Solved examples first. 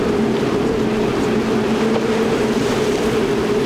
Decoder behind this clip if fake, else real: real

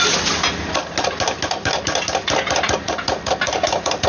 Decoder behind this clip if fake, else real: real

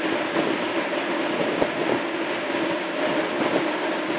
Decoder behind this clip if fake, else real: real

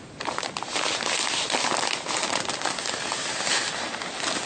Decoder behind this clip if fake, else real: real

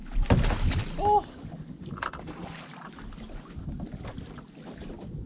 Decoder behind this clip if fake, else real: real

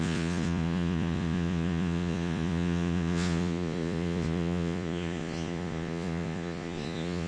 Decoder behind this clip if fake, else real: fake, vocoder, Vocos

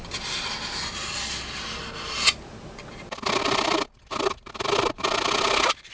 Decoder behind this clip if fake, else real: real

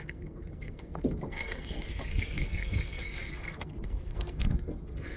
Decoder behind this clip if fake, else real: fake, codec, SNAC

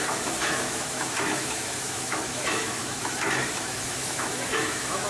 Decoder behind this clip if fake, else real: fake, autoencoder, DAC-VAE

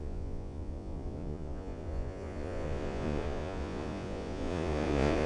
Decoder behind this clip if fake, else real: fake, vocoder, Vocos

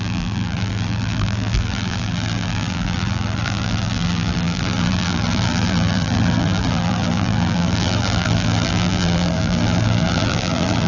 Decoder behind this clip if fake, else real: fake, vocoder, BigVGAN v2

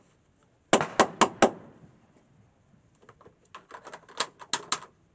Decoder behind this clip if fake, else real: real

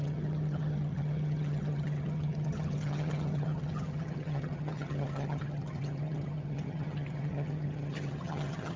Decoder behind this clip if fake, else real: fake, vocoder, HiFi-GAN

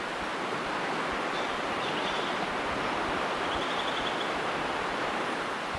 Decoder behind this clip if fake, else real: real